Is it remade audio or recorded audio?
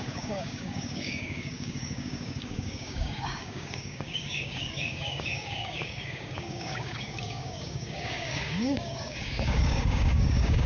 remade